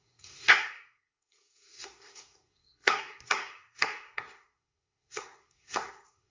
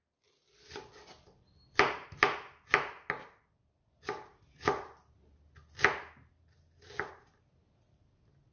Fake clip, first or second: first